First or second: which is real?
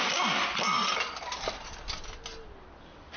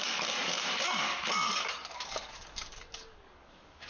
first